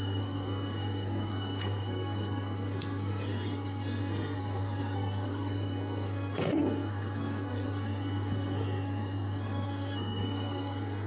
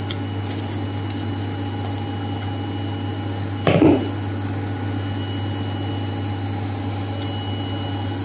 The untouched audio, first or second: second